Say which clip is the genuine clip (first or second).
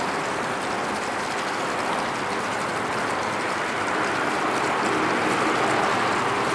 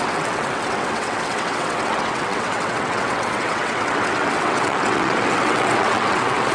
first